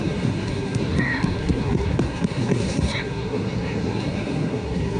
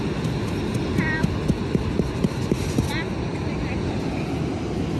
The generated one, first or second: first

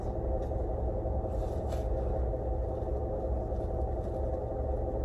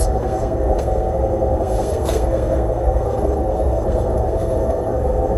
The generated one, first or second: second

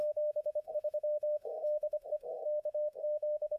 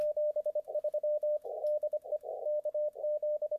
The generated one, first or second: first